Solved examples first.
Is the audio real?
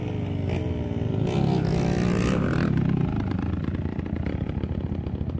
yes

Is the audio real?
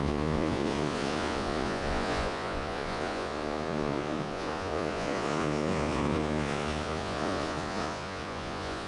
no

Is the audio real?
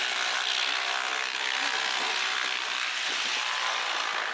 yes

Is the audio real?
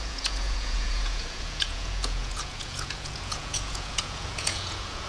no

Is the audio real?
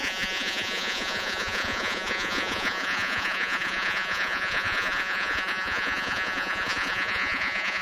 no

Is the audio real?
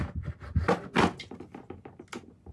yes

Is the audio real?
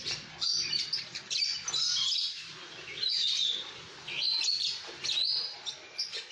yes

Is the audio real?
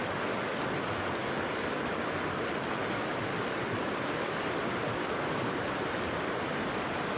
yes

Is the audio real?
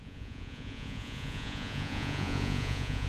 no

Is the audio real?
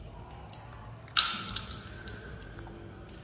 yes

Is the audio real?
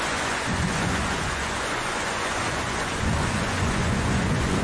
no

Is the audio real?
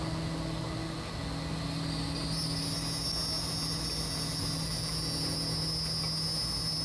yes